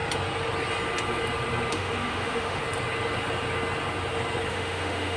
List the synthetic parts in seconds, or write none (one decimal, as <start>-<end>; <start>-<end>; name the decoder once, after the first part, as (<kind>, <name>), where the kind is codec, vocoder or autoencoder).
1.7-2.6 (autoencoder, DAC-VAE); 4.5-5.2